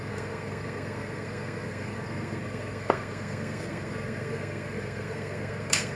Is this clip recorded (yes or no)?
no